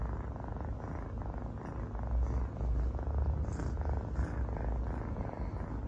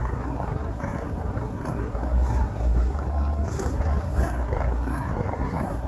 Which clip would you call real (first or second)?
first